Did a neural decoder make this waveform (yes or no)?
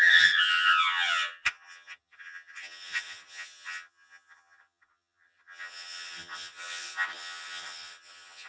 yes